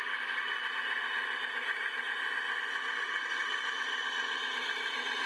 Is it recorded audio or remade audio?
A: recorded